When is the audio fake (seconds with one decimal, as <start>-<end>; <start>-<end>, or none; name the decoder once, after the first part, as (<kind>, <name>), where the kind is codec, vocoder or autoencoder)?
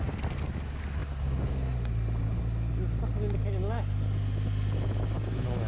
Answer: none